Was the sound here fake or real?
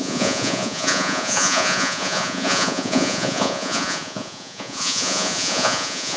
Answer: fake